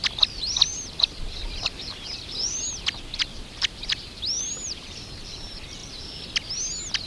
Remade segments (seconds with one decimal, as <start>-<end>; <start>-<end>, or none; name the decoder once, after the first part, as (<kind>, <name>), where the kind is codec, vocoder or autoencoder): 0.7-5.0 (vocoder, BigVGAN v2)